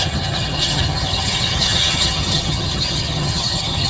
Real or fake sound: fake